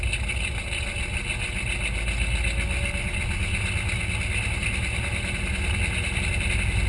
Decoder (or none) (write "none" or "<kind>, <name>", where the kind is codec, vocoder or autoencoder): none